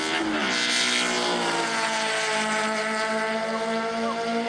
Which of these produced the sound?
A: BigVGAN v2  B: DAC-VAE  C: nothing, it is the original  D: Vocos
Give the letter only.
C